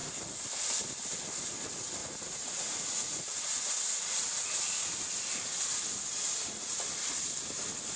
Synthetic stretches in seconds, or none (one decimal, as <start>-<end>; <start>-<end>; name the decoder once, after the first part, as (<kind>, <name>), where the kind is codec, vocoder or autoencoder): 2.0-5.1 (vocoder, Vocos)